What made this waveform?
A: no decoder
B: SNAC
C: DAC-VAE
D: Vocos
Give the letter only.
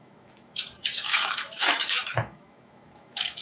C